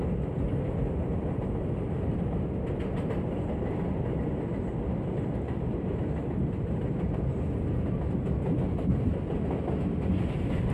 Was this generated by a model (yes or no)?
no